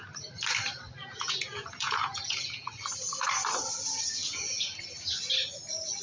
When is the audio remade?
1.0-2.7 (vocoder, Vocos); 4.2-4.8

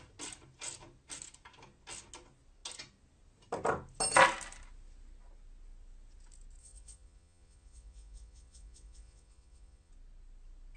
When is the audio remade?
6.6-9.9 (vocoder, Vocos)

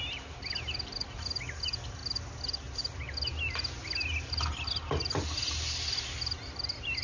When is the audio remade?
none

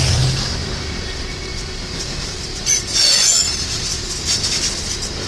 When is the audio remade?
2.5-3.4 (vocoder, Vocos)

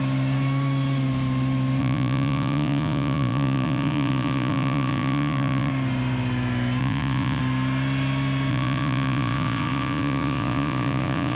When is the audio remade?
1.8-5.7 (vocoder, Vocos); 6.8-7.4; 8.5-11.4